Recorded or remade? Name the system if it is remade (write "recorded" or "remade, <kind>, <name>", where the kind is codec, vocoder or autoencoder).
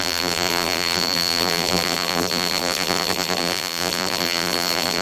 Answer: remade, vocoder, BigVGAN v2